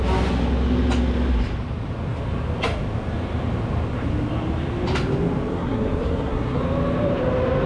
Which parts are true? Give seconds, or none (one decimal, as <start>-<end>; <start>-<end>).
0.0-5.5; 6.6-7.7